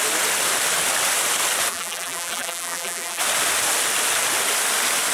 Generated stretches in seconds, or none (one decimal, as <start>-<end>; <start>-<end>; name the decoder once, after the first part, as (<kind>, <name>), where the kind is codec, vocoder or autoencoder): 1.7-3.2 (vocoder, BigVGAN v2)